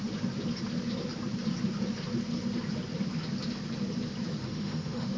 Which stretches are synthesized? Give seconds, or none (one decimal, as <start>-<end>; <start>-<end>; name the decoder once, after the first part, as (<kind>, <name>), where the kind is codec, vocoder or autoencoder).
4.4-5.2 (autoencoder, DAC-VAE)

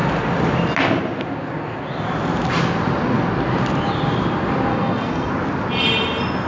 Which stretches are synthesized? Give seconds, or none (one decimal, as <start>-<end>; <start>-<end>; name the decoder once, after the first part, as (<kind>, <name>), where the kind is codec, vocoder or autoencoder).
4.7-5.3 (codec, SNAC)

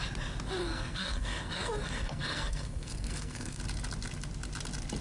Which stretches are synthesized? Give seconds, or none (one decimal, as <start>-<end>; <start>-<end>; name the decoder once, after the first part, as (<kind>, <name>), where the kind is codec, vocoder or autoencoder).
0.6-3.6 (codec, SNAC)

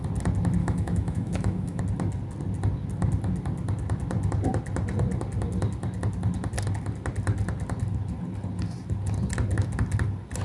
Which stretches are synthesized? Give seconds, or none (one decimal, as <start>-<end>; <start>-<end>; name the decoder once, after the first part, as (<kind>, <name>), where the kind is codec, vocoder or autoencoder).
0.6-1.8 (autoencoder, DAC-VAE)